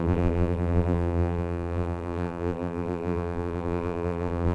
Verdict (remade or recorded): remade